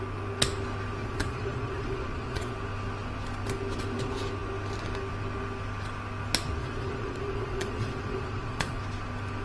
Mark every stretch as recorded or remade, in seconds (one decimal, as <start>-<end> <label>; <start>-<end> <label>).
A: 0.0-1.0 recorded; 1.0-2.5 remade; 2.5-6.6 recorded; 6.6-8.8 remade; 8.8-9.4 recorded

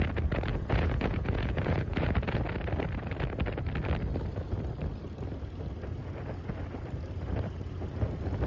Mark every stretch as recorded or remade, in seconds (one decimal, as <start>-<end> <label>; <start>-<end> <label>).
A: 0.0-0.5 recorded; 0.5-2.4 remade; 2.4-8.5 recorded

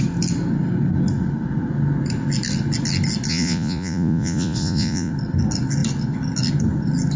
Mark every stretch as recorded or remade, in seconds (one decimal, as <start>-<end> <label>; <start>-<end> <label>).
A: 0.0-3.3 recorded; 3.3-5.1 remade; 5.1-7.2 recorded